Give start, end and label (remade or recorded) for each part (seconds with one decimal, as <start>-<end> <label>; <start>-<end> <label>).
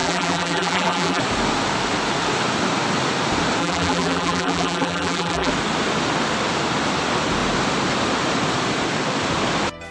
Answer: 0.0-1.2 remade; 1.2-3.6 recorded; 3.6-5.5 remade; 5.5-9.9 recorded